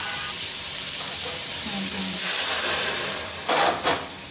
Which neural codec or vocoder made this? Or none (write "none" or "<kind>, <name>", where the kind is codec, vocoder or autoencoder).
none